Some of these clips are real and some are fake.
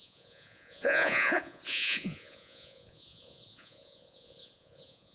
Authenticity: fake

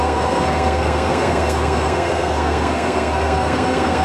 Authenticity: fake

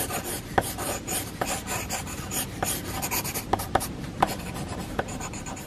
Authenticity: fake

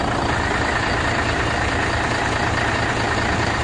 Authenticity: real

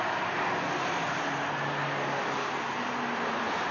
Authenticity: real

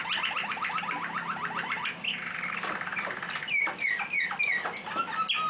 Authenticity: real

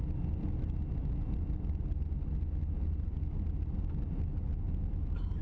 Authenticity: real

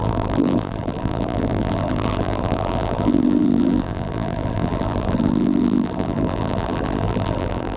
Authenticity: fake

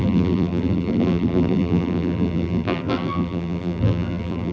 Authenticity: fake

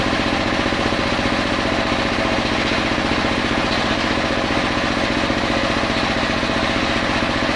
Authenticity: real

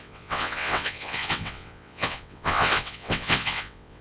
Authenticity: fake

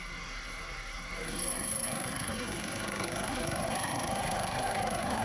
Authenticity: fake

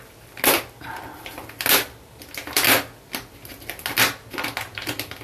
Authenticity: real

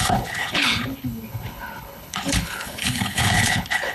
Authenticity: fake